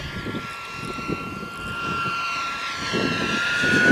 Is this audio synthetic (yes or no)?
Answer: no